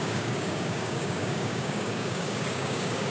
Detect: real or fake fake